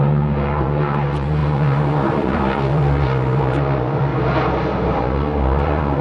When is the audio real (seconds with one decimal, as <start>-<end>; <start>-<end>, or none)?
4.1-5.0